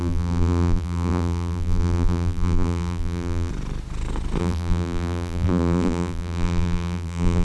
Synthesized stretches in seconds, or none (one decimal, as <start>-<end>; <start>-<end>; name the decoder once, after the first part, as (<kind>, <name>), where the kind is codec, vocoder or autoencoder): 0.0-3.5 (vocoder, BigVGAN v2); 4.4-7.4